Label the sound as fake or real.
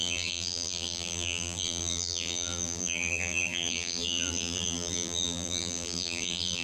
fake